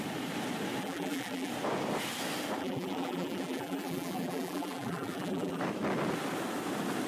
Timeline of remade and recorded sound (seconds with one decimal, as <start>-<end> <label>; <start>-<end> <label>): 0.0-0.8 recorded; 0.8-1.5 remade; 1.5-2.6 recorded; 2.6-5.6 remade; 5.6-7.1 recorded